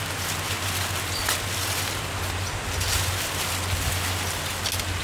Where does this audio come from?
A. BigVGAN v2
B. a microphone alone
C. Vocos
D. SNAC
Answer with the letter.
B